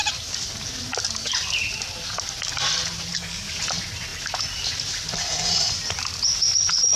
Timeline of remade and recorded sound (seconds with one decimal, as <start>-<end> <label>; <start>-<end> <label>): 0.0-3.1 recorded; 3.1-3.6 remade; 3.6-7.0 recorded